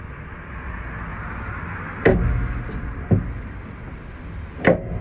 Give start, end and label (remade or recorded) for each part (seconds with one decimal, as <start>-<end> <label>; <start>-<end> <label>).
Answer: 0.0-5.0 recorded

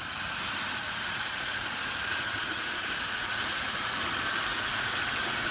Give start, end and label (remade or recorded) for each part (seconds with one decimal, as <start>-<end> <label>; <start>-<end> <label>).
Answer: 0.0-0.8 recorded; 0.8-4.1 remade; 4.1-4.5 recorded; 4.5-5.5 remade